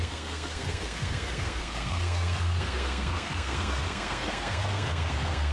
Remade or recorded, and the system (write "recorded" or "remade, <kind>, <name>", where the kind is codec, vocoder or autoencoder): remade, codec, SNAC